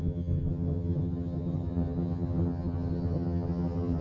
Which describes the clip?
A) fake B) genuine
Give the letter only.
A